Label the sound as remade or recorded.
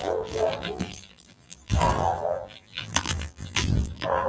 remade